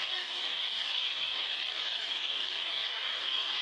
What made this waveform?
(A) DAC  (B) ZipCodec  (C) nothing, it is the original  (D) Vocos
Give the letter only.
A